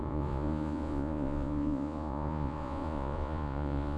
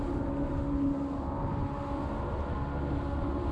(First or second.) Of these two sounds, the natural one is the second